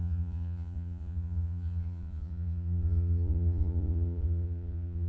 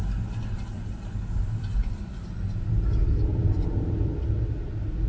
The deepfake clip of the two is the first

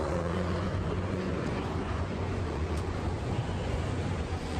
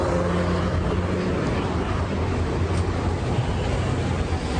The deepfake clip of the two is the first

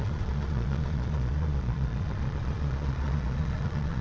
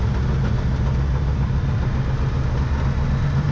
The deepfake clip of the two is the first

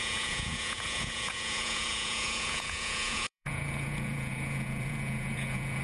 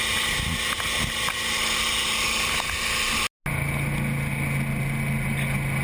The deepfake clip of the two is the first